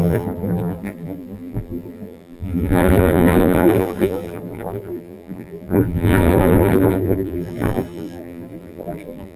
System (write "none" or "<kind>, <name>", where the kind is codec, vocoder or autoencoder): vocoder, BigVGAN v2